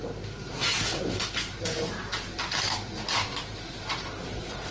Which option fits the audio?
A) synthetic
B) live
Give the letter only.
B